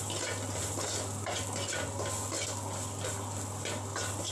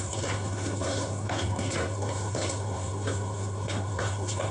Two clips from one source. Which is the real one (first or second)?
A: first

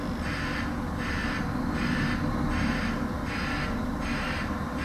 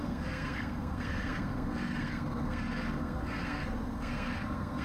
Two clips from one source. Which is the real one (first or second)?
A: first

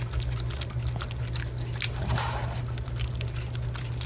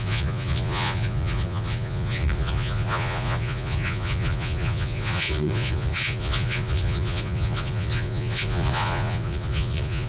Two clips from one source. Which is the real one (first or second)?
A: first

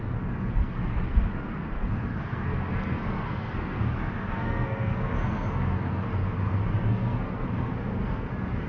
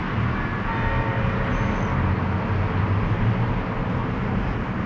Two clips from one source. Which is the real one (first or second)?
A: second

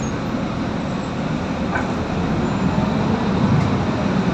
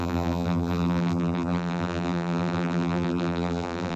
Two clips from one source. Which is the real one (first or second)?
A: first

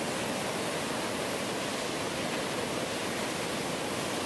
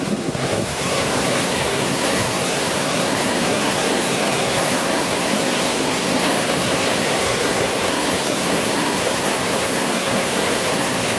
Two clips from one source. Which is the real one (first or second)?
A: first